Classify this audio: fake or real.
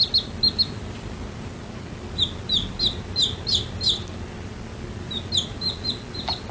real